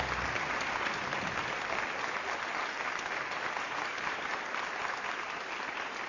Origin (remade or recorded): recorded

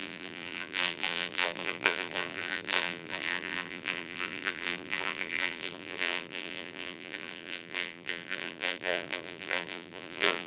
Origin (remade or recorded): remade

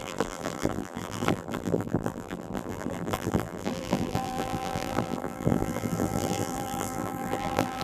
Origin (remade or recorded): remade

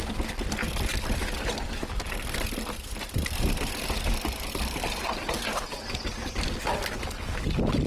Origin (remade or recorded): recorded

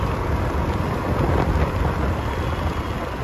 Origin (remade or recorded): recorded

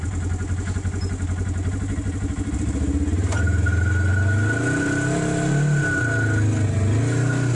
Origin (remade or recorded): recorded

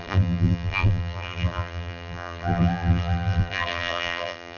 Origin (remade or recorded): remade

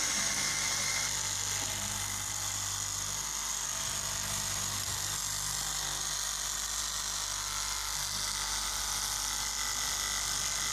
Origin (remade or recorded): recorded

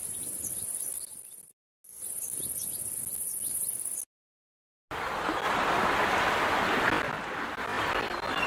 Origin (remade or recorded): recorded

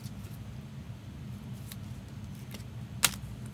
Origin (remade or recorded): recorded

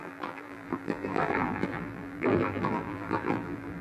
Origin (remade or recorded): remade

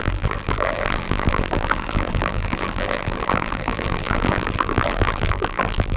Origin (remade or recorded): remade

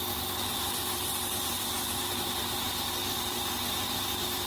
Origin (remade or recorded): recorded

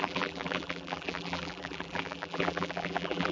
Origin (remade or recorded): remade